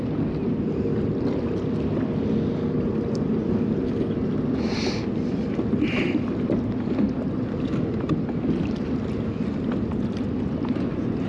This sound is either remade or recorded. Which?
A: recorded